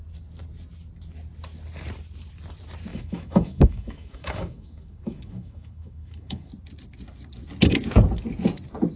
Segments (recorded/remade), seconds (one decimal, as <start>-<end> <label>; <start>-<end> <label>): 0.0-2.9 recorded; 2.9-6.5 remade; 6.5-9.0 recorded